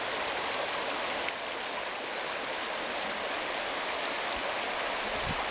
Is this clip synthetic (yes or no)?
no